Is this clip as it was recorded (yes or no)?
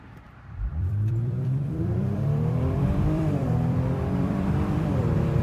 no